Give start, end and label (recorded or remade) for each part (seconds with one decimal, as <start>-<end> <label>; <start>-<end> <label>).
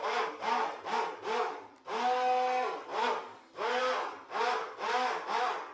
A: 0.0-5.7 recorded